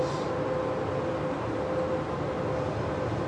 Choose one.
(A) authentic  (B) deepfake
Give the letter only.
A